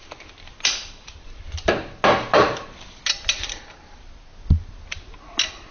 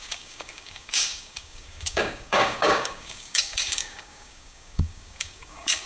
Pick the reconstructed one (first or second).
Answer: second